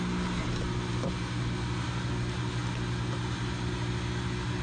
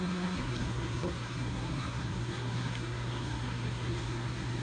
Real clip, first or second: first